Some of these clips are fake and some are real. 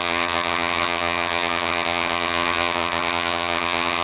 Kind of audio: fake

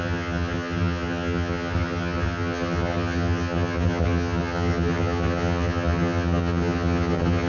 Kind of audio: fake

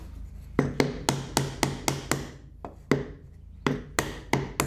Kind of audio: real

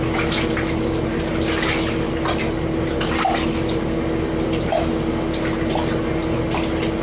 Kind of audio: real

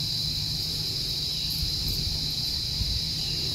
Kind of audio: fake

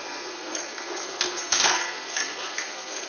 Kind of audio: fake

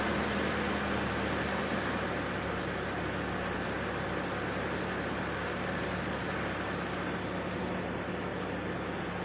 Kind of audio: real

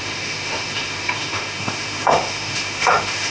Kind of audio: fake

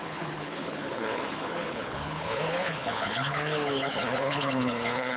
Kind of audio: fake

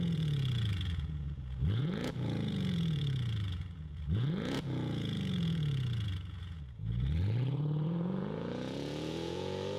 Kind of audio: fake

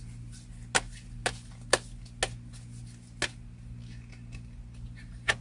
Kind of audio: real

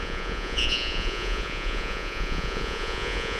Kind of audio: fake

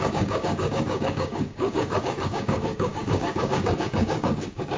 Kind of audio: fake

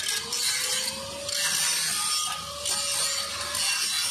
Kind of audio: real